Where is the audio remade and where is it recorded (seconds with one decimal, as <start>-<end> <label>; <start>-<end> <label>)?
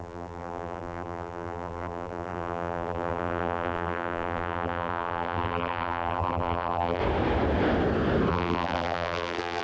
0.0-7.0 remade; 7.0-8.3 recorded; 8.3-9.6 remade